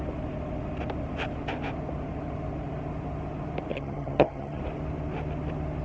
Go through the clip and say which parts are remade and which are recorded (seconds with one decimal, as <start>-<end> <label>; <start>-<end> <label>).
0.0-3.7 recorded; 3.7-4.6 remade; 4.6-5.8 recorded